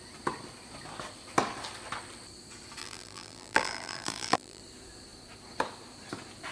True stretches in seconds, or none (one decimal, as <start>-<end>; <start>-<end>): 0.0-2.8; 4.6-6.5